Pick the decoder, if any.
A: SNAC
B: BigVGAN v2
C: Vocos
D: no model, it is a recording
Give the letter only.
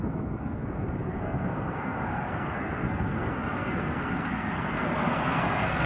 A